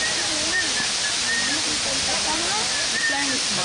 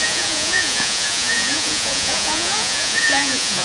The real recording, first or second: first